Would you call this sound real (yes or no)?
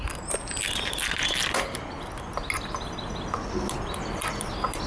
yes